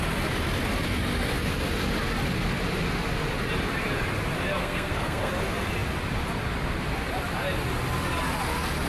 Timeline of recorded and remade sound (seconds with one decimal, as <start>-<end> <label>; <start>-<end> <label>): 0.0-4.6 recorded; 4.6-5.3 remade; 5.3-8.9 recorded